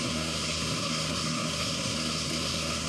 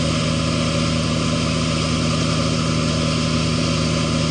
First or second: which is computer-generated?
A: first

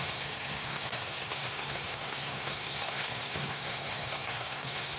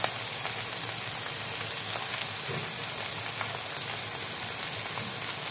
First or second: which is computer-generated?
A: first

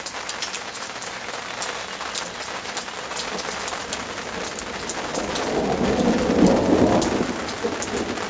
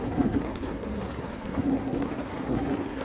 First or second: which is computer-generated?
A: second